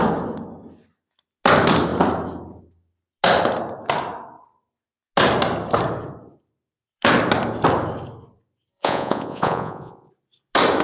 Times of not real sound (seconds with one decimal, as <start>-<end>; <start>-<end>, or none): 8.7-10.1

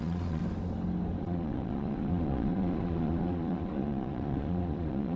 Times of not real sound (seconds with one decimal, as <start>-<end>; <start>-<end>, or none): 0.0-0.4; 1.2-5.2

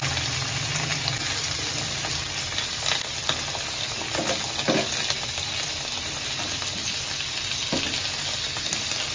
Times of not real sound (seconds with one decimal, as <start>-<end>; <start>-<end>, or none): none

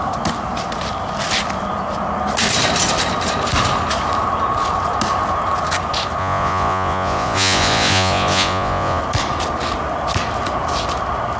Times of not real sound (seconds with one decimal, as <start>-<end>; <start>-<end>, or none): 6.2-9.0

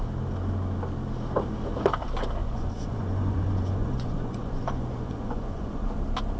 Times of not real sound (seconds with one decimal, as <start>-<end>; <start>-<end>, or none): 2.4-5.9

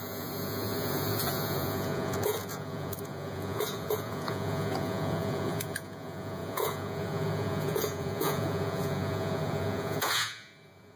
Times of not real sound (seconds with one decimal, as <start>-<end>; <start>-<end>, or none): 0.0-11.0

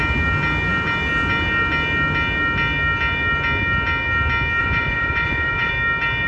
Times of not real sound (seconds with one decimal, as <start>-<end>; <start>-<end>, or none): 4.6-5.7

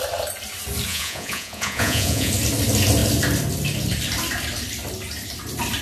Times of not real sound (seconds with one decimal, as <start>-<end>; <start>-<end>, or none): 0.9-2.3